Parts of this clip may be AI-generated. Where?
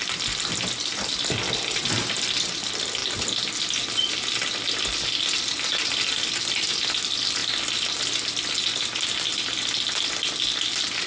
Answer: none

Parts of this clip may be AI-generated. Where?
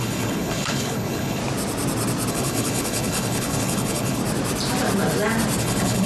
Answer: 0.0-1.4; 2.3-4.2; 5.6-6.1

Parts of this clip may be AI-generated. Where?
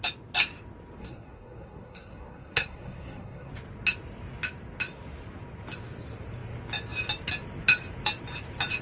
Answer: 1.0-3.5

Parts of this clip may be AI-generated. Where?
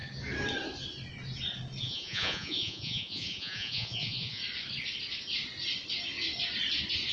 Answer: 1.8-4.4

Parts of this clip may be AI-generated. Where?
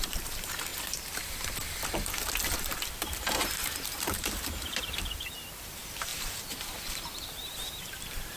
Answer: 0.0-0.7; 2.4-8.4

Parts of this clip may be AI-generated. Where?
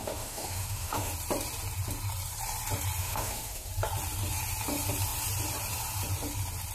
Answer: 0.0-1.1; 3.0-3.7